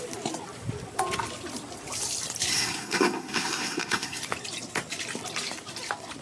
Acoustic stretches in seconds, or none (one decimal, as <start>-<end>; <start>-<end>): 0.0-2.5; 4.2-6.2